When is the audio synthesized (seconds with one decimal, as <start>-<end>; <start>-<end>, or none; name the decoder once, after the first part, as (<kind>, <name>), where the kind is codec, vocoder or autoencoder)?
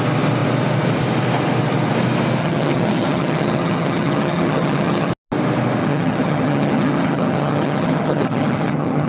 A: 2.4-5.1 (vocoder, HiFi-GAN); 5.8-9.1